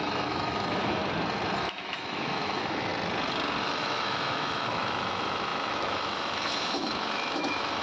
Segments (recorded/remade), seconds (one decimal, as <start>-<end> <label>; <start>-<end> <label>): 0.0-1.0 remade; 1.0-1.6 recorded; 1.6-2.9 remade; 2.9-3.6 recorded; 3.6-7.8 remade